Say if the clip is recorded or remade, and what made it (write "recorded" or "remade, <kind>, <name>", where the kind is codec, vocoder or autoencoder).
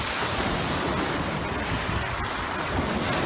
recorded